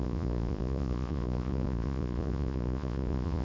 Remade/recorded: remade